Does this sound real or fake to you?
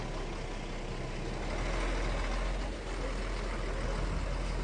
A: real